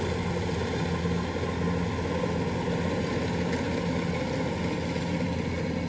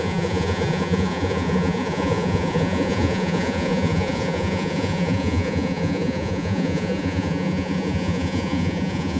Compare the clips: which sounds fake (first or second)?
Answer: second